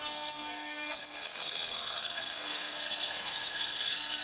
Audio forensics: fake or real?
fake